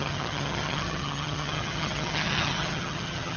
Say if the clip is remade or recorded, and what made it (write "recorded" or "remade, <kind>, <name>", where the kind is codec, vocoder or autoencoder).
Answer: remade, vocoder, HiFi-GAN